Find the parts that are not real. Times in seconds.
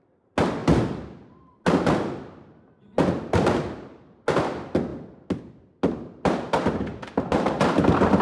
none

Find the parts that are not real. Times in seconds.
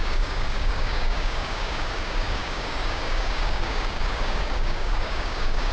0.0-5.7 (codec, DAC)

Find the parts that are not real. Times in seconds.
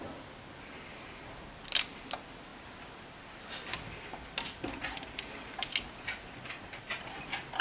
none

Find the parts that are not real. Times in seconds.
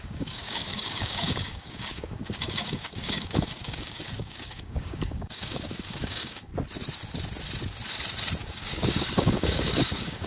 0.0-6.5 (codec, DAC); 8.5-10.3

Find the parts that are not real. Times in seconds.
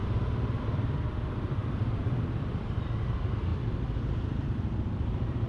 0.6-3.5 (vocoder, BigVGAN v2); 4.4-5.5